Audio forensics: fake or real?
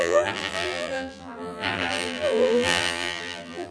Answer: fake